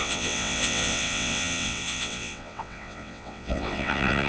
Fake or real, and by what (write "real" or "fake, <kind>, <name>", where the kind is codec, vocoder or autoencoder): fake, vocoder, WaveNeXt